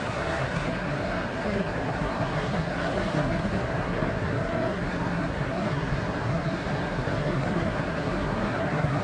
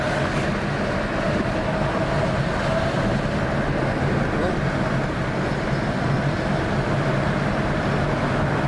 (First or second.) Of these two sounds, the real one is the second